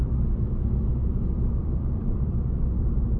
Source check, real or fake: fake